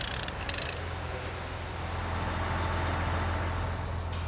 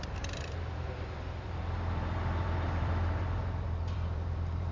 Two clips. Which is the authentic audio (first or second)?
first